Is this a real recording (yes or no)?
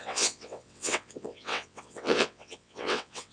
no